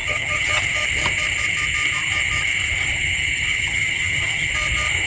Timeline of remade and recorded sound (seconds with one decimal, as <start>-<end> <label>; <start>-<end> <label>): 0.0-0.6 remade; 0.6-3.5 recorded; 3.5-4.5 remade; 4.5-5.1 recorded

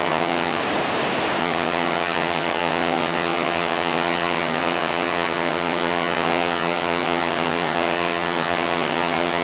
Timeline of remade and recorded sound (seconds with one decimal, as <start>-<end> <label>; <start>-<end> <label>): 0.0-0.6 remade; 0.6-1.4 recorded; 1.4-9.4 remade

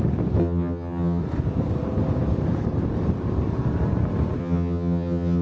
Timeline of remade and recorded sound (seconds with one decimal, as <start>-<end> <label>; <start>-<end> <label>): 0.0-0.4 recorded; 0.4-1.2 remade; 1.2-4.4 recorded; 4.4-5.4 remade